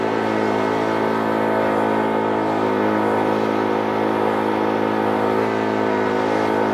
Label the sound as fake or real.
real